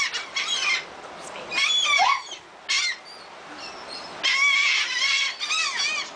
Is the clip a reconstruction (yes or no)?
no